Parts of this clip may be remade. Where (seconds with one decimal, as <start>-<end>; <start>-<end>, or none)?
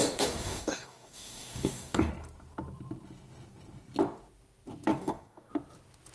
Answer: 0.0-2.1; 4.9-5.5